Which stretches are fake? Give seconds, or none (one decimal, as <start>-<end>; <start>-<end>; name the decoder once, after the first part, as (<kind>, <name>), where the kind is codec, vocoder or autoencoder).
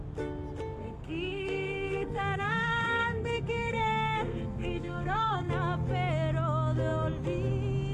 0.8-5.5 (codec, SNAC)